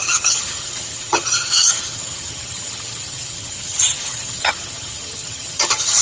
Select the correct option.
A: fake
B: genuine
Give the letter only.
A